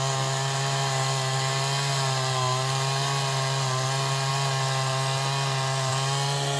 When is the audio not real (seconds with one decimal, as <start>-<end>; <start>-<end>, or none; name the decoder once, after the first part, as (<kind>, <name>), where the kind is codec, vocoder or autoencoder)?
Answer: none